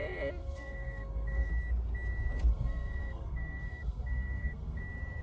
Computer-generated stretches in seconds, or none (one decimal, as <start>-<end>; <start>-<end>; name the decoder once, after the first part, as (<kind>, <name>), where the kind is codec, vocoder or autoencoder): 0.4-1.5 (codec, SNAC); 2.5-4.8